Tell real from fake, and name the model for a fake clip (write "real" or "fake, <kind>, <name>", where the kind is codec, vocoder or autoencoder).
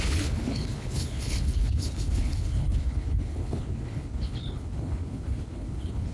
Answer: fake, codec, HILCodec